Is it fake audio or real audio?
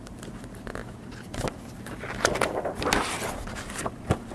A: real